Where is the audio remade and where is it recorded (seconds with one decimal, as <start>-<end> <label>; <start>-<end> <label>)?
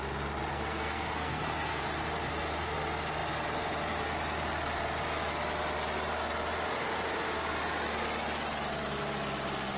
0.0-0.5 recorded; 0.5-1.8 remade; 1.8-9.8 recorded